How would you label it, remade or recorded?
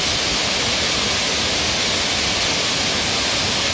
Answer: recorded